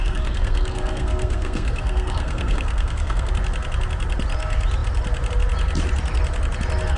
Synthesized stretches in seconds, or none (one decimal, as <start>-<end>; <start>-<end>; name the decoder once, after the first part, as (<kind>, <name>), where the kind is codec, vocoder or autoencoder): 0.0-3.3 (codec, SNAC)